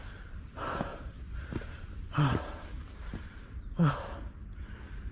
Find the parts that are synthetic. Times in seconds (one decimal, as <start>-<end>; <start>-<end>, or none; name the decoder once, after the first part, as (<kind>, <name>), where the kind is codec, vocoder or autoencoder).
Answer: 0.9-3.7 (vocoder, BigVGAN v2)